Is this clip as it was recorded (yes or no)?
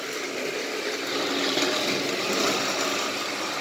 yes